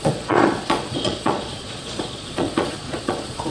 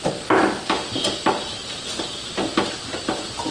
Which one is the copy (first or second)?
first